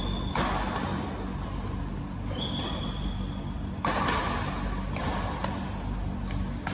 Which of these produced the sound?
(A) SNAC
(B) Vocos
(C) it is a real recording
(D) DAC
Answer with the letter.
C